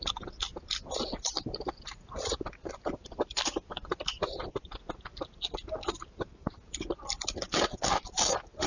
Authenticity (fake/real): real